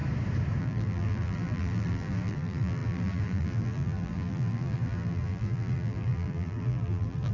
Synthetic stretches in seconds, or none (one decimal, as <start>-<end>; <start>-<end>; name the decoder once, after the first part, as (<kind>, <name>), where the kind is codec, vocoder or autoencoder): 0.6-7.3 (vocoder, BigVGAN v2)